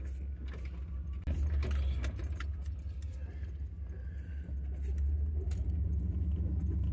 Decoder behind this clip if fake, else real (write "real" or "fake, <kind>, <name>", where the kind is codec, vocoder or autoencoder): real